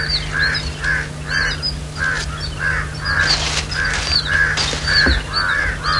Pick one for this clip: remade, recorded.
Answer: recorded